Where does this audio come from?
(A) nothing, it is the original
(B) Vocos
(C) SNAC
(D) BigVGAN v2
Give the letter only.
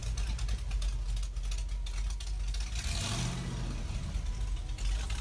A